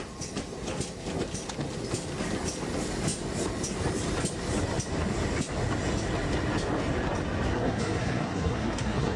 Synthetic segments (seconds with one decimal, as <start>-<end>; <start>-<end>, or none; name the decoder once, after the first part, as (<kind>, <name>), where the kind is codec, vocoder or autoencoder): 7.5-9.2 (codec, SNAC)